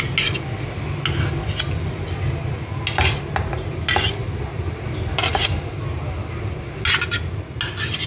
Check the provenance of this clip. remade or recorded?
recorded